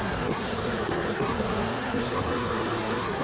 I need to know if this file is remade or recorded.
remade